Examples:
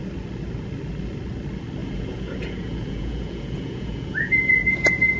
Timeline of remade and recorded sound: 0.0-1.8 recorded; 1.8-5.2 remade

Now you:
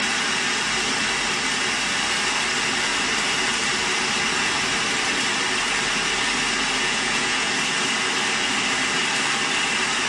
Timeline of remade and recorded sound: 0.0-6.8 recorded; 6.8-7.5 remade; 7.5-10.1 recorded

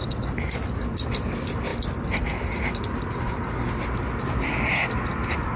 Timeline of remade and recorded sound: 0.0-5.6 recorded

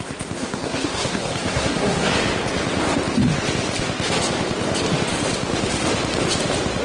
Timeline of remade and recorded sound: 0.0-0.4 recorded; 0.4-2.1 remade; 2.1-6.8 recorded

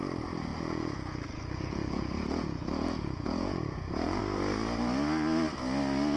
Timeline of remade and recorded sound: 0.0-0.5 recorded; 0.5-4.2 remade; 4.2-6.2 recorded

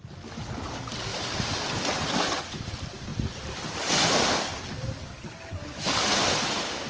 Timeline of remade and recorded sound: 0.0-1.1 recorded; 1.1-2.4 remade; 2.4-6.9 recorded